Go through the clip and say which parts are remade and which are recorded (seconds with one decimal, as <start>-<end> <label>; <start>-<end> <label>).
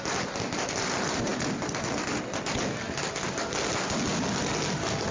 0.0-5.1 recorded